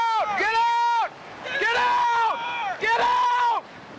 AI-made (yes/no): no